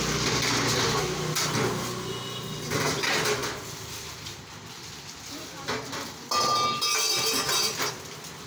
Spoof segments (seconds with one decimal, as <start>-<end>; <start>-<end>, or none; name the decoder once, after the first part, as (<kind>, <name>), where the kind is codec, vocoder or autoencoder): none